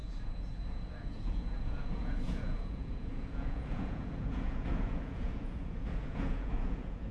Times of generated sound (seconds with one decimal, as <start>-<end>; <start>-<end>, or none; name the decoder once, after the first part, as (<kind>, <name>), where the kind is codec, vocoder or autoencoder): 0.0-7.1 (vocoder, Vocos)